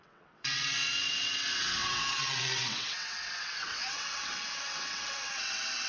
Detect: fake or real fake